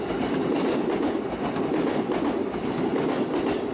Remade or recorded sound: recorded